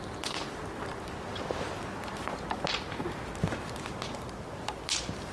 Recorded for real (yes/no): yes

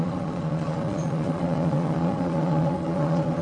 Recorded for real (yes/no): no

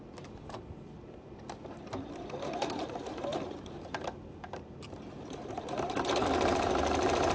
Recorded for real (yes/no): no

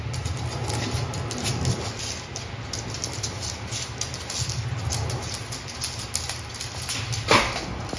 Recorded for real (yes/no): yes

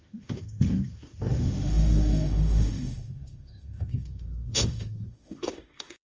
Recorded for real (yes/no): no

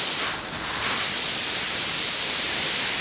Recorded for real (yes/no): yes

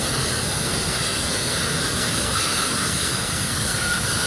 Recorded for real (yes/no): no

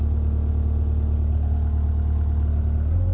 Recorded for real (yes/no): yes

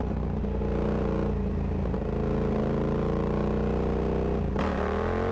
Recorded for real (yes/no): yes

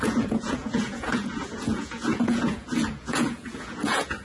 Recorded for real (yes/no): no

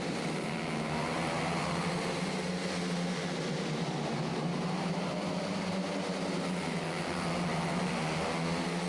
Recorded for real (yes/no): yes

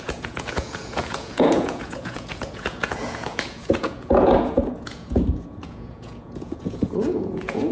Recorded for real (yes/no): no